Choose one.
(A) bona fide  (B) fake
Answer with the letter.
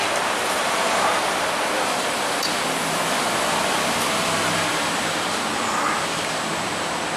A